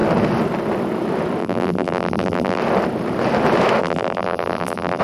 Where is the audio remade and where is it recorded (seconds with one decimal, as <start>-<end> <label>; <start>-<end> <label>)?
0.0-1.4 recorded; 1.4-2.6 remade; 2.6-3.8 recorded; 3.8-5.0 remade